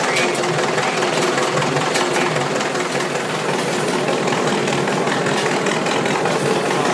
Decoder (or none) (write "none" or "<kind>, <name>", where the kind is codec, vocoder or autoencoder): none